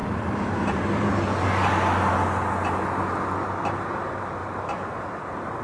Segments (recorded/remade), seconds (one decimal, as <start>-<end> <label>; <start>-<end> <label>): 0.0-1.2 remade; 1.2-4.4 recorded; 4.4-5.6 remade